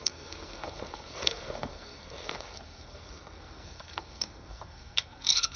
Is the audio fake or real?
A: fake